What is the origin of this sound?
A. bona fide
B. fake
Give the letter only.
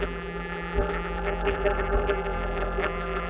B